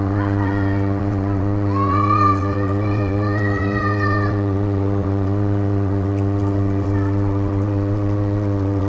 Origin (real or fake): fake